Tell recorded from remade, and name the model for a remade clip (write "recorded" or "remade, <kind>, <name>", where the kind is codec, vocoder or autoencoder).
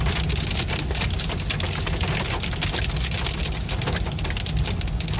recorded